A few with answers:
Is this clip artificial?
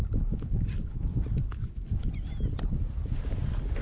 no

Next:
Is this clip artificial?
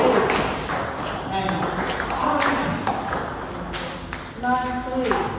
no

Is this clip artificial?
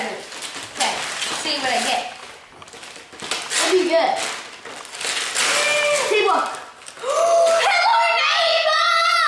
no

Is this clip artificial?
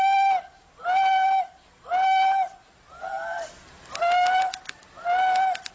no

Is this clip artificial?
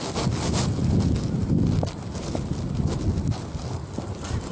no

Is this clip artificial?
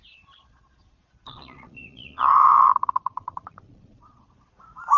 yes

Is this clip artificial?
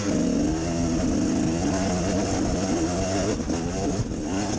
no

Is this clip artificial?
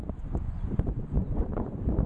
yes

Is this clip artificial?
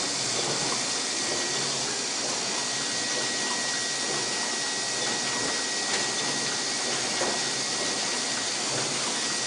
no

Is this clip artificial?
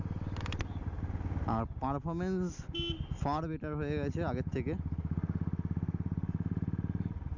no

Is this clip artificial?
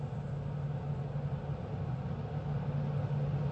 no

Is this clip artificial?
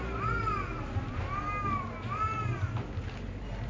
no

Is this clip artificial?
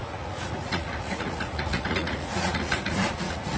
yes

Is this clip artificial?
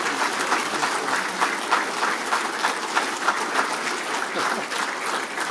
no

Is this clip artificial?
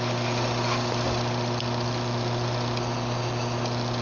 no